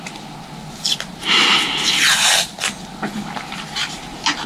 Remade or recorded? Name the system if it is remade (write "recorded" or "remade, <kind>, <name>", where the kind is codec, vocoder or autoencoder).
recorded